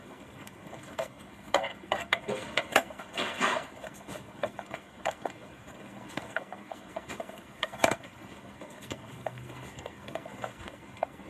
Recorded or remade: remade